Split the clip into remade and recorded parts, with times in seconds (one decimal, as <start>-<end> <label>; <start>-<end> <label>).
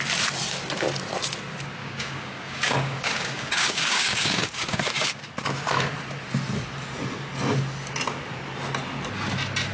0.0-1.8 recorded; 1.8-5.2 remade; 5.2-9.7 recorded